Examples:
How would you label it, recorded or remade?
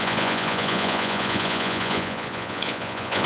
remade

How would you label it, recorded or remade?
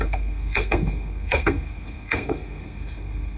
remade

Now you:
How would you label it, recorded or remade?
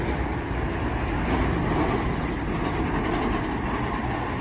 recorded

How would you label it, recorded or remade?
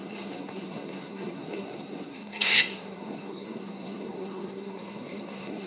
remade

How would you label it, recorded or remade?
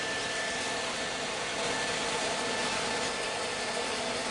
recorded